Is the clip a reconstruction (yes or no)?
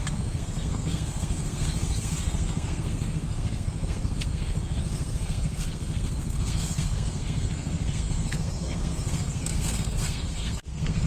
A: yes